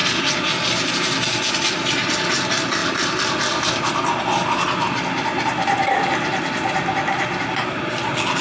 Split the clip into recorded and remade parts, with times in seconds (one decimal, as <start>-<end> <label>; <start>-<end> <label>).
0.0-8.4 recorded